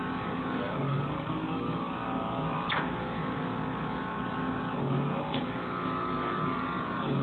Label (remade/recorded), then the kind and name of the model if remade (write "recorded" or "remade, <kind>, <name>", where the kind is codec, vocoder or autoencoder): remade, codec, DAC